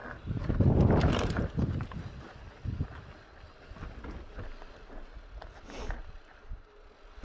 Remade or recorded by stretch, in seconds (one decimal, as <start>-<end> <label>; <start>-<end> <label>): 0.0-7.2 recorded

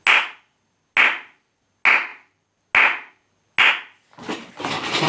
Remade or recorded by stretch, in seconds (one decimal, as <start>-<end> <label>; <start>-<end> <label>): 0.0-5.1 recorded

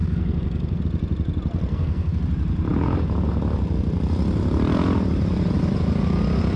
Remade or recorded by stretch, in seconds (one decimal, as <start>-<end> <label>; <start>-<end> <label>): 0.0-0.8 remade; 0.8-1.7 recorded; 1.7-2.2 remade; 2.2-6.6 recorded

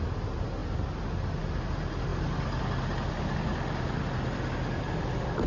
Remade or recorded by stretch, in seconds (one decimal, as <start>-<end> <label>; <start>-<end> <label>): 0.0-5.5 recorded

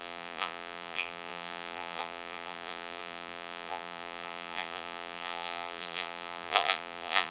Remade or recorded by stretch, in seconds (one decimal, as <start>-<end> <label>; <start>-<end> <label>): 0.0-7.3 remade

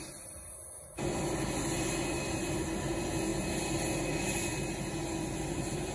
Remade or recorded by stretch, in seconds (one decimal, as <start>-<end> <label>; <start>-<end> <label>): 0.0-5.9 recorded